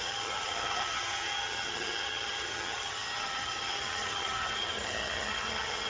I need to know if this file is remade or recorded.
remade